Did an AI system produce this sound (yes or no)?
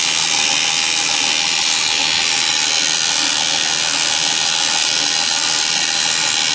no